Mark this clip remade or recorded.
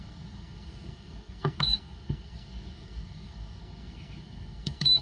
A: remade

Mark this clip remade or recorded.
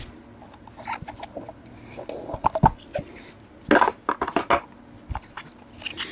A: recorded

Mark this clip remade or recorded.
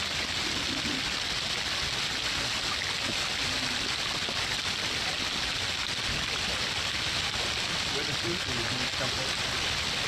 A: recorded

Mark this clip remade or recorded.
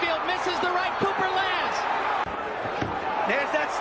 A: recorded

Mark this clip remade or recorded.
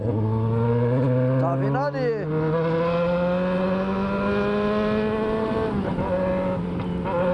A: recorded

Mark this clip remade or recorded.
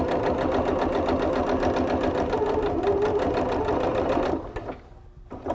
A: recorded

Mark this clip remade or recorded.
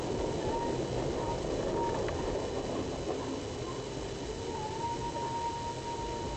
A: recorded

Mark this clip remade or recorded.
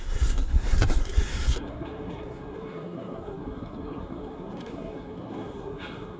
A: remade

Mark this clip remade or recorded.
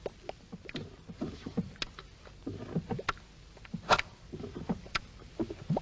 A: recorded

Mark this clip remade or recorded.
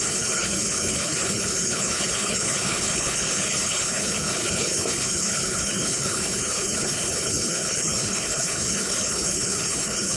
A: remade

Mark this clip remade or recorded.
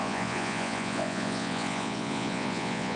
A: remade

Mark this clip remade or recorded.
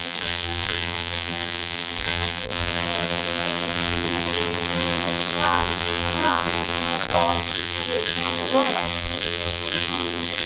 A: remade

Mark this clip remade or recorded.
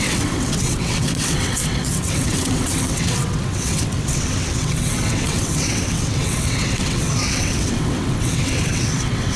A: remade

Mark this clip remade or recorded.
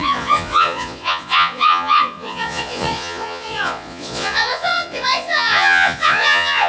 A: remade